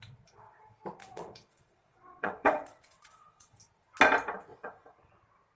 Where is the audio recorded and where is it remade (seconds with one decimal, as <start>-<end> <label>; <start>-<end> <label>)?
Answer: 0.0-1.0 recorded; 1.0-3.6 remade; 3.6-4.5 recorded; 4.5-5.1 remade; 5.1-5.6 recorded